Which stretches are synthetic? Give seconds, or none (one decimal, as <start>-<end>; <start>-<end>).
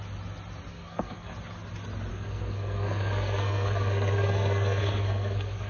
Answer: 0.7-1.3; 2.1-5.7